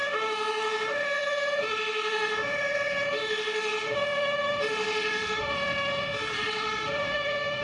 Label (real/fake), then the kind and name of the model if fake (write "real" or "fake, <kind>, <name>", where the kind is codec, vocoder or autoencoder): fake, autoencoder, DAC-VAE